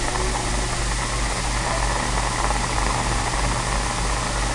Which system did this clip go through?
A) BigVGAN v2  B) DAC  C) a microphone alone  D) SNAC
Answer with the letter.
C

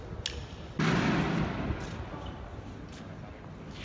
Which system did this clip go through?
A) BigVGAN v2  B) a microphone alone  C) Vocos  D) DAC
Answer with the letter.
B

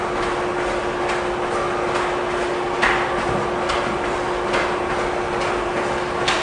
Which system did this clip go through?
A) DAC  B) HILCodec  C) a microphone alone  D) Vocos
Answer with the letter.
C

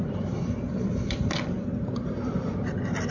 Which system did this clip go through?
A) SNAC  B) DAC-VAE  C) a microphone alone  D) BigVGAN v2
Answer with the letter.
D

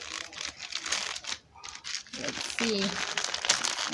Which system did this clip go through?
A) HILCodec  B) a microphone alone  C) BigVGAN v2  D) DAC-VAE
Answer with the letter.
B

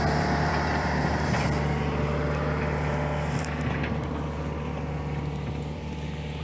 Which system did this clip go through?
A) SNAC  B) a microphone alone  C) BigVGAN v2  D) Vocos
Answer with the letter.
C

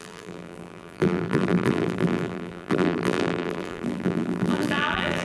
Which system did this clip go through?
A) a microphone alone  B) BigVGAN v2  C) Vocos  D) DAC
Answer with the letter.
B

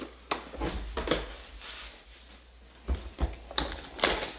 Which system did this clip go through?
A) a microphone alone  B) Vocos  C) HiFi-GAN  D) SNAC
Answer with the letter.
A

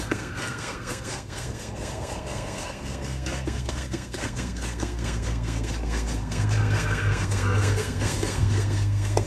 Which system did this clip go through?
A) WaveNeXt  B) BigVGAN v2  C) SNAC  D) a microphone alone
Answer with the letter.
C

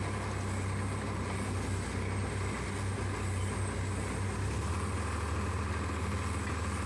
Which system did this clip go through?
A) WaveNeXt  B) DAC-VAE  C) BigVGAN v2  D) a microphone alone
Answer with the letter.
D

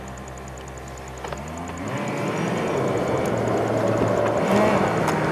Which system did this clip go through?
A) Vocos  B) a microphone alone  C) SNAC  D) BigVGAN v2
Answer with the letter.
B